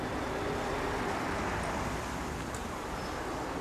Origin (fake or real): real